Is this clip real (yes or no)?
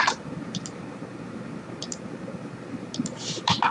no